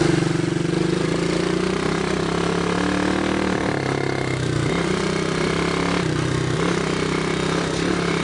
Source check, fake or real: real